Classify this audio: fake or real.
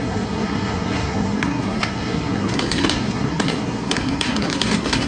fake